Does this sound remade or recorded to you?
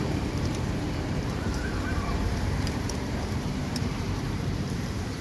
remade